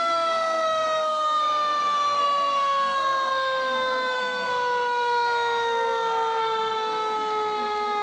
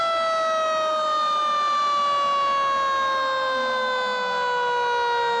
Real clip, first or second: second